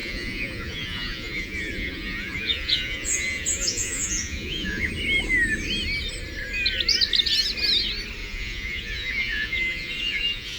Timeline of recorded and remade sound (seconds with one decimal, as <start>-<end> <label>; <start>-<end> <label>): 0.0-4.9 remade; 4.9-8.2 recorded; 8.2-10.6 remade